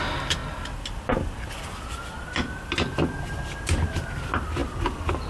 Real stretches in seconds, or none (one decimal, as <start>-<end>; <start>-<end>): 0.0-5.3